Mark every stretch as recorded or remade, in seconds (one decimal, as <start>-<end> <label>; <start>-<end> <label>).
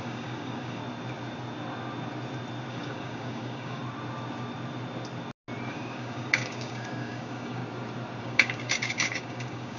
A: 0.0-0.8 remade; 0.8-2.7 recorded; 2.7-3.8 remade; 3.8-5.7 recorded; 5.7-7.6 remade; 7.6-8.2 recorded; 8.2-9.8 remade